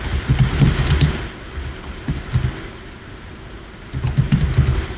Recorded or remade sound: recorded